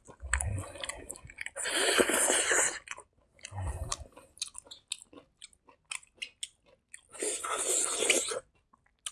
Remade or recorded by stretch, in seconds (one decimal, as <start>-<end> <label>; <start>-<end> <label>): 0.0-9.1 recorded